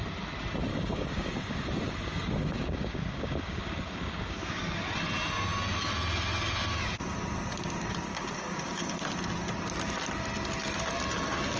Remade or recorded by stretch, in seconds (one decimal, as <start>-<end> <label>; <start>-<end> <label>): 0.0-0.7 recorded; 0.7-4.6 remade; 4.6-8.1 recorded; 8.1-9.0 remade; 9.0-11.6 recorded